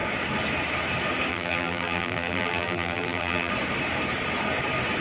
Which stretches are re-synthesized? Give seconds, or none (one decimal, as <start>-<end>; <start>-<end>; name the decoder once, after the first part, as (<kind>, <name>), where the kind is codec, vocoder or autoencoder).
1.3-3.5 (vocoder, BigVGAN v2)

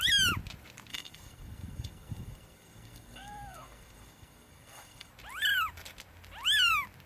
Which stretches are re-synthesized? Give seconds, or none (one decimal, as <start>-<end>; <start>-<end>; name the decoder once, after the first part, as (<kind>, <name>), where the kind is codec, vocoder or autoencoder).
0.9-5.1 (codec, SNAC)

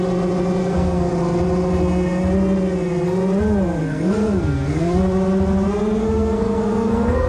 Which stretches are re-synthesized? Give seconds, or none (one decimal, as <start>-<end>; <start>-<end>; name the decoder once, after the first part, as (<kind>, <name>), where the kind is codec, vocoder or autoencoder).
0.6-1.1 (codec, SNAC); 3.8-5.0; 6.0-7.3

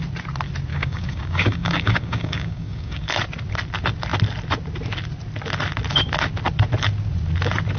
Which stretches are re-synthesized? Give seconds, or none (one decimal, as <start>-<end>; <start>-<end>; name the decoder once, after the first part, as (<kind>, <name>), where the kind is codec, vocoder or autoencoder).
0.7-3.1 (codec, DAC)

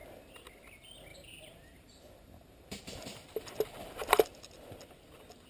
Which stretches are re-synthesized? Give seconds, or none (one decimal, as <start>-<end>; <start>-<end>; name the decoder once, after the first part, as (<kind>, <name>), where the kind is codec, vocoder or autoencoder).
1.1-2.8 (vocoder, BigVGAN v2)